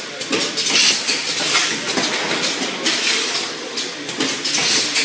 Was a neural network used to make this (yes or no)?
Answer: no